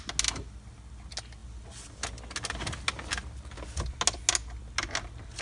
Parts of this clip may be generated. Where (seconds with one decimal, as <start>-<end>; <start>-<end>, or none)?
none